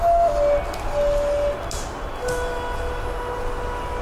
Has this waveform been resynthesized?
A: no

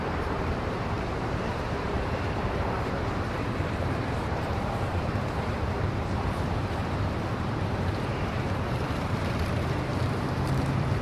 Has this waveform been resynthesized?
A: yes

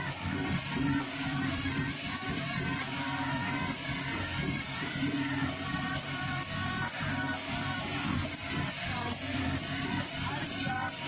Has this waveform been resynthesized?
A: yes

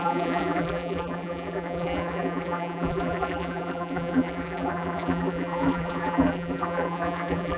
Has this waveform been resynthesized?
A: yes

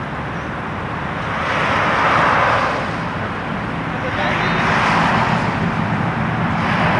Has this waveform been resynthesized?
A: no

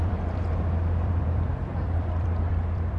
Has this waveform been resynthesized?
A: yes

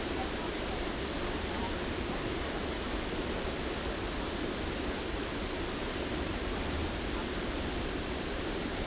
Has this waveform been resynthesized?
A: yes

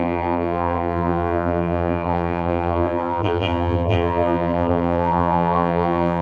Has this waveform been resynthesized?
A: yes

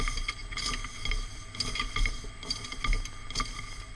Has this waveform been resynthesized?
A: no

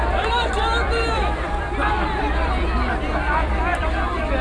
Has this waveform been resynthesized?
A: yes